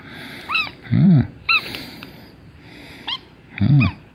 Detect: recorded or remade remade